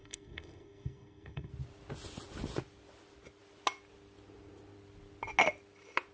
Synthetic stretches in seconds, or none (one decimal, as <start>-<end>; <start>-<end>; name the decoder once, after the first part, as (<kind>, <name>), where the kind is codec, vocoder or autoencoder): 0.0-1.5 (codec, SNAC)